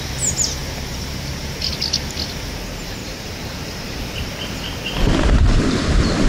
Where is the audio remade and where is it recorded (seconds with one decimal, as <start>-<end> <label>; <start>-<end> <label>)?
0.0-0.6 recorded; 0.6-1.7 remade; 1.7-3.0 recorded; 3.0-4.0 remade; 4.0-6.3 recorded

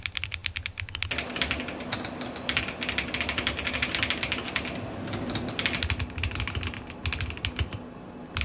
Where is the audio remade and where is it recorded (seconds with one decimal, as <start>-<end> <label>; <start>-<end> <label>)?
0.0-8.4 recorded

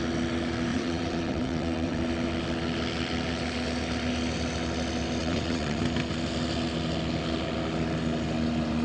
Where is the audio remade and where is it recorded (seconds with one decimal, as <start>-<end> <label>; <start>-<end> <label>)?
0.0-0.7 recorded; 0.7-2.0 remade; 2.0-5.2 recorded; 5.2-5.8 remade; 5.8-8.8 recorded

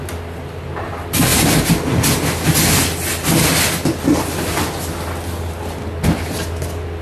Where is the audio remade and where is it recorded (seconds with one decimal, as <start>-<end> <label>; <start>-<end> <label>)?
0.0-7.0 recorded

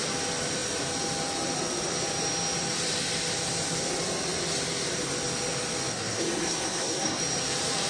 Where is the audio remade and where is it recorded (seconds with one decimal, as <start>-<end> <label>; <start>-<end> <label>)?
0.0-5.9 recorded; 5.9-7.2 remade; 7.2-7.9 recorded

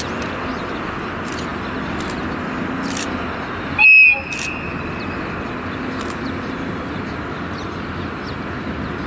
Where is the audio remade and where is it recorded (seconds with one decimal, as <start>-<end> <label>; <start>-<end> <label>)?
0.0-9.1 recorded

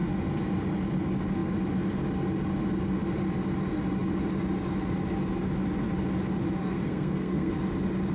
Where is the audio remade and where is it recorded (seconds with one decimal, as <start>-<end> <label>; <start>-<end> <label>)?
0.0-6.6 recorded; 6.6-7.5 remade; 7.5-8.1 recorded

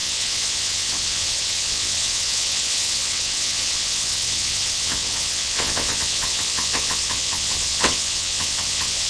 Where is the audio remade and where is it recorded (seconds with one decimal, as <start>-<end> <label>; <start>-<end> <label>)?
0.0-9.1 remade